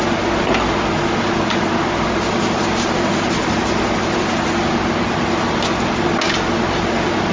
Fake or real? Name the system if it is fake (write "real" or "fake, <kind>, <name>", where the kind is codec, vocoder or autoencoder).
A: real